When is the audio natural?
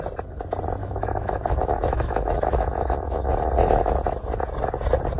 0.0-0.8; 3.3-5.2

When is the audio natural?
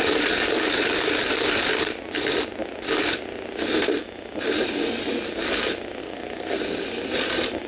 0.0-6.0; 6.6-7.7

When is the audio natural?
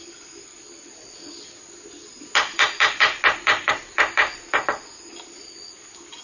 0.0-6.2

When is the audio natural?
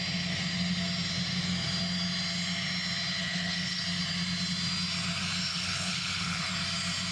0.0-3.2; 3.8-5.5; 6.5-7.1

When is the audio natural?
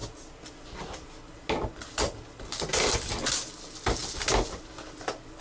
0.0-5.4